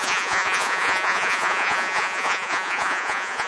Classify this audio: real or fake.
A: fake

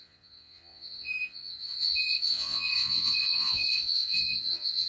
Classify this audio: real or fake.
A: fake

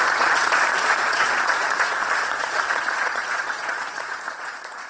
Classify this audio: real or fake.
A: fake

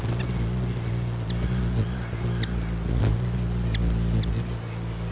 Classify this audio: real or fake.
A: real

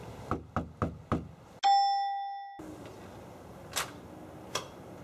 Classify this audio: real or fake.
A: real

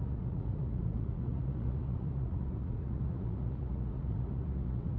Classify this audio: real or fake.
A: fake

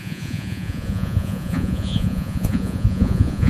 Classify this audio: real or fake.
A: fake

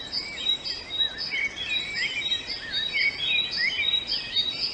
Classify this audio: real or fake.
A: real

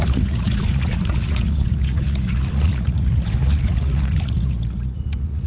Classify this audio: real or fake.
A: fake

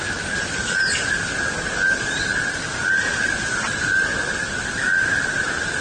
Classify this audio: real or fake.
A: real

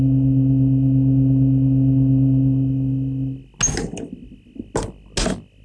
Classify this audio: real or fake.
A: real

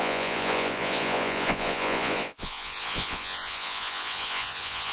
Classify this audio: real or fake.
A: fake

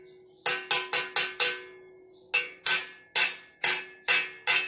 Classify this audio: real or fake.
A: real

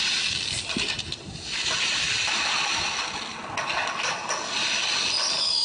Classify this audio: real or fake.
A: real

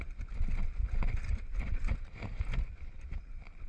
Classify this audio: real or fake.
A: real